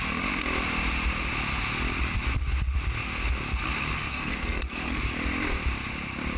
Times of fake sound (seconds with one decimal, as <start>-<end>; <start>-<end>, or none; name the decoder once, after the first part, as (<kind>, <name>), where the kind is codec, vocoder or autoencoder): 4.1-5.0 (codec, SNAC)

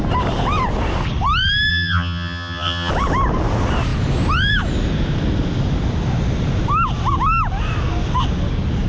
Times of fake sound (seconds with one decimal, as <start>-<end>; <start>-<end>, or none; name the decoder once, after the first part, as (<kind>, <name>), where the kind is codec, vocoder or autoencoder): 1.7-2.9 (vocoder, HiFi-GAN)

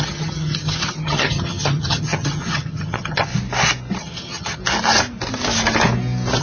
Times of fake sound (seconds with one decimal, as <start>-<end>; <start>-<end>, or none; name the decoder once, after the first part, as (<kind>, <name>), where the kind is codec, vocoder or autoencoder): 0.0-3.3 (vocoder, HiFi-GAN); 4.0-4.6

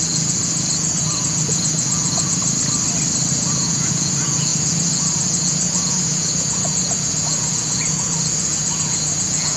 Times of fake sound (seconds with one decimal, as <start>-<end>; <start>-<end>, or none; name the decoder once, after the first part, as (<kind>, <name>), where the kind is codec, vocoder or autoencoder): 0.0-2.4 (vocoder, Vocos); 3.3-9.6

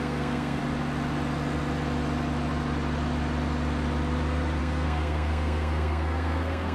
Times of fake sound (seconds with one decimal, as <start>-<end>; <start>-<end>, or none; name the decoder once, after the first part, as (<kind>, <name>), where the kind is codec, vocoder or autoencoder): 0.0-0.6 (codec, SNAC); 4.6-6.7

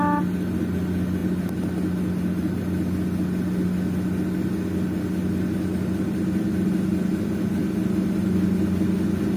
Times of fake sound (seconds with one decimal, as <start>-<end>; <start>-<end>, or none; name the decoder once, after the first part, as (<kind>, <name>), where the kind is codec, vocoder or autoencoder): none

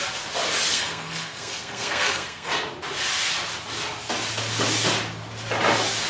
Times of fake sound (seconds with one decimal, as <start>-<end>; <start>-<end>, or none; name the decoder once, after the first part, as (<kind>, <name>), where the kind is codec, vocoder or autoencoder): 0.7-2.5 (codec, SNAC)